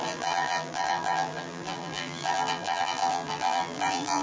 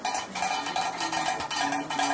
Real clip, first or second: second